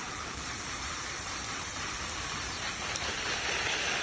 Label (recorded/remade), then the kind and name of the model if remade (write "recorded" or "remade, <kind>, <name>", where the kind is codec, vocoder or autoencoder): remade, vocoder, BigVGAN v2